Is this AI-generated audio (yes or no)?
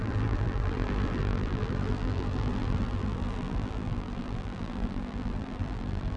yes